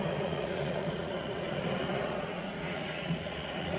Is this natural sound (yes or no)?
no